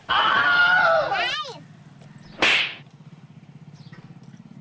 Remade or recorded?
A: recorded